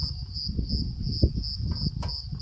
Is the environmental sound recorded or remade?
recorded